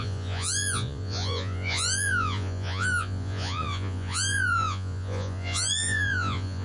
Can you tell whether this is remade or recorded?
remade